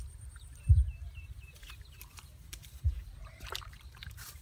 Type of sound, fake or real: fake